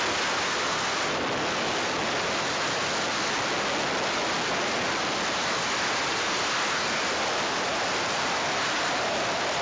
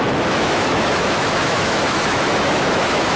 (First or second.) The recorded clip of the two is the first